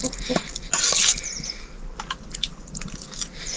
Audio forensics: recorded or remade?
recorded